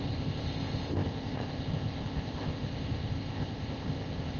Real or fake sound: fake